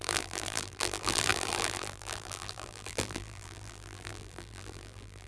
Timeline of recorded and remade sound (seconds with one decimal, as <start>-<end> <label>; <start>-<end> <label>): 0.0-5.3 remade